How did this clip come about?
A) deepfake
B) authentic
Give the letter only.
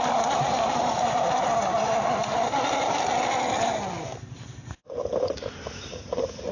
B